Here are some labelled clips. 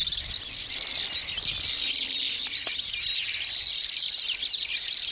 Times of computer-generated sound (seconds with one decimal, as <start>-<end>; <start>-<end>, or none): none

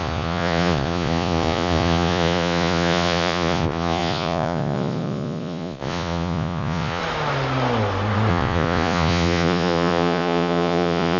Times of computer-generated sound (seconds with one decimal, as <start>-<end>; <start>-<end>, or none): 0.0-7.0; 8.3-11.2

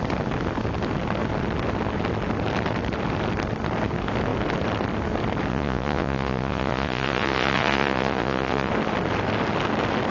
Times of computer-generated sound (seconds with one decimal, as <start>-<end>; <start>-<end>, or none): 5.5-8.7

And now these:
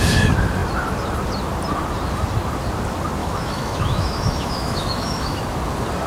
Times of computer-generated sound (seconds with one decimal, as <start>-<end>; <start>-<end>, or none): 3.2-5.4

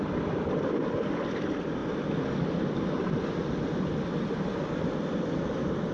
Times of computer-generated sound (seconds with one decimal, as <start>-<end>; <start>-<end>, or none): none

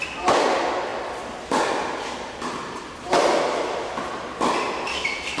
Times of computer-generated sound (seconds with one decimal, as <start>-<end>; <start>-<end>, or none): none

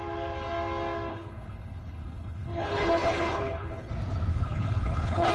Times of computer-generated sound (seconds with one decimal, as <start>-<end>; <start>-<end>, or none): 1.1-3.9; 4.3-5.3